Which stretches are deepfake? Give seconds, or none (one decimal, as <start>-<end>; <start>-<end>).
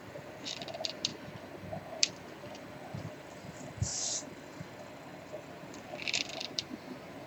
0.0-1.1; 1.9-2.4; 3.0-3.9; 5.5-7.3